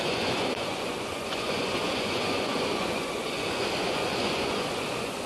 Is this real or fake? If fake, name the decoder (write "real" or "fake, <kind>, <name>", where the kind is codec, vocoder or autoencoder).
fake, vocoder, Vocos